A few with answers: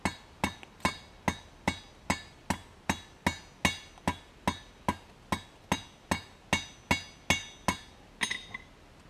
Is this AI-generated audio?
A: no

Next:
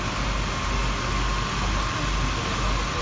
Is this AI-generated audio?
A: no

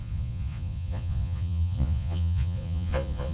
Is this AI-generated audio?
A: yes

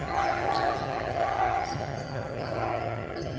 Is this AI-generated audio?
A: yes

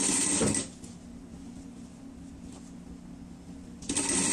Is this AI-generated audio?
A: no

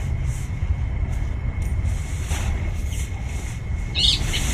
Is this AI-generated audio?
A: no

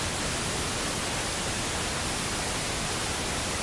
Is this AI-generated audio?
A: no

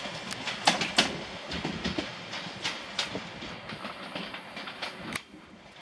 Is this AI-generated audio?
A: no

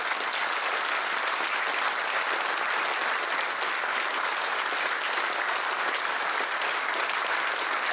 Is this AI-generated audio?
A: no